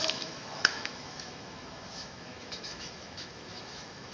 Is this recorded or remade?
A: remade